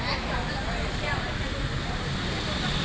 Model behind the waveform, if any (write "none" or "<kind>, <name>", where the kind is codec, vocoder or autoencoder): none